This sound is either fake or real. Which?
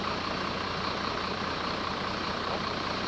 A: fake